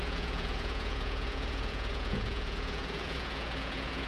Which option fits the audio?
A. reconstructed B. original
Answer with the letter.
A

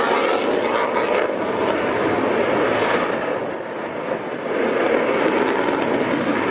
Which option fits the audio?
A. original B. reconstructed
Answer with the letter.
A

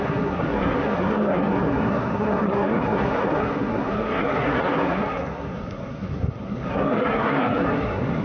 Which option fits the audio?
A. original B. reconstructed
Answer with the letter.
B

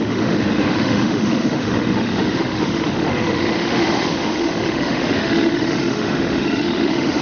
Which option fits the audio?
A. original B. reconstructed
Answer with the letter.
B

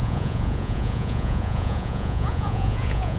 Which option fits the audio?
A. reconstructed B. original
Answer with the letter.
A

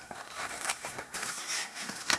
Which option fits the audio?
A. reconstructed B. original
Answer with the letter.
A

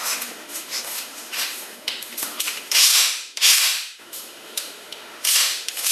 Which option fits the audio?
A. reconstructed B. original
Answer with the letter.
A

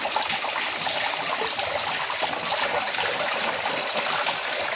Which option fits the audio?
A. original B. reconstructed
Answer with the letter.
A